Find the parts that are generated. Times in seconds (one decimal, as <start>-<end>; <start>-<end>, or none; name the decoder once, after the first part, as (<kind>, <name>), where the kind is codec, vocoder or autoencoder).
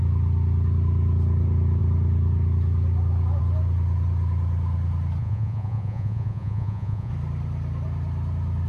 5.2-7.1 (vocoder, Vocos)